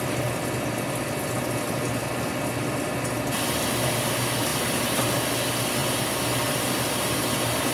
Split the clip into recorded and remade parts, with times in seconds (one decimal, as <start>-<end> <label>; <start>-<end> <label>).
0.0-4.5 recorded; 4.5-5.0 remade; 5.0-7.7 recorded